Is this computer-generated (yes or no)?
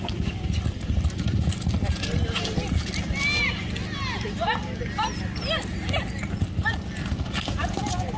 no